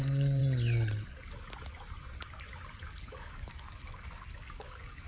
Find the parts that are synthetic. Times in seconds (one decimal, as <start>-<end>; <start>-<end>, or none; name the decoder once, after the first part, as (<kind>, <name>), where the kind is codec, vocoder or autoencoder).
0.0-0.4 (codec, DAC); 2.8-5.1